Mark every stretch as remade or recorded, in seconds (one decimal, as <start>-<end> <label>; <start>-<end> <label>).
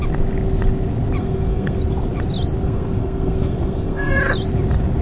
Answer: 0.0-1.2 recorded; 1.2-1.8 remade; 1.8-2.6 recorded; 2.6-4.2 remade; 4.2-5.0 recorded